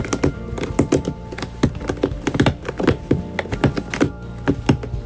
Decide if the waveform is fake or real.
real